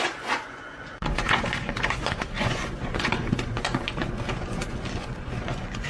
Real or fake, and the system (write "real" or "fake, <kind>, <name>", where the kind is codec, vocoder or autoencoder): fake, vocoder, Vocos